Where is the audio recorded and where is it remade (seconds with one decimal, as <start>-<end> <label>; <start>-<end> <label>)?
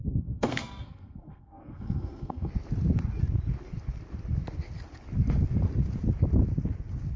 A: 0.0-2.5 remade; 2.5-7.2 recorded